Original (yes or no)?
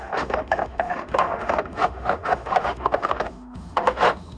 no